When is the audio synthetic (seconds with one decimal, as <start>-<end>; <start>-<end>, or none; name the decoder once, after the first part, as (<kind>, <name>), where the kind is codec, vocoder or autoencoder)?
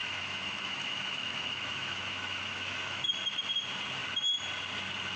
0.0-3.1 (autoencoder, DAC-VAE)